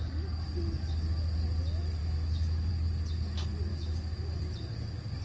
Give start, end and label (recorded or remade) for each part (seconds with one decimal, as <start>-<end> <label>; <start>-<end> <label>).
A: 0.0-2.0 recorded; 2.0-2.7 remade; 2.7-3.7 recorded; 3.7-4.4 remade; 4.4-5.2 recorded

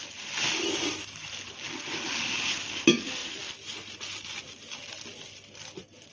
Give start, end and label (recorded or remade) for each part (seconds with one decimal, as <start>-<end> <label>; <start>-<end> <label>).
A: 0.0-6.1 recorded

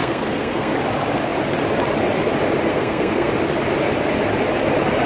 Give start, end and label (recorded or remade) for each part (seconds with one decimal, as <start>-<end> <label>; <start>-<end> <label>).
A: 0.0-0.7 remade; 0.7-2.7 recorded; 2.7-3.3 remade; 3.3-5.1 recorded

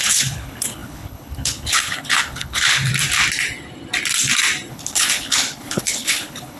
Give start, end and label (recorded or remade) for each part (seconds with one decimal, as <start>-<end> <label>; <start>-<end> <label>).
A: 0.0-2.9 remade; 2.9-4.7 recorded; 4.7-6.6 remade

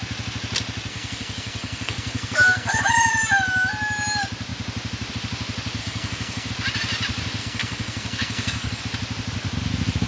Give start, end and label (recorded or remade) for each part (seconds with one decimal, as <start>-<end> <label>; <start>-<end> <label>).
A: 0.0-0.9 recorded; 0.9-2.8 remade; 2.8-5.8 recorded; 5.8-6.5 remade; 6.5-7.4 recorded; 7.4-8.8 remade; 8.8-10.1 recorded

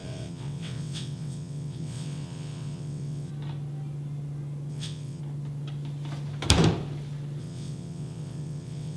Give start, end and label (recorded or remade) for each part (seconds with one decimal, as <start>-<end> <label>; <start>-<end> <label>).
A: 0.0-3.3 remade; 3.3-4.7 recorded; 4.7-5.2 remade; 5.2-7.4 recorded; 7.4-9.0 remade